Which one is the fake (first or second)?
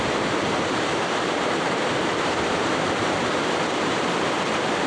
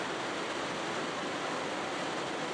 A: first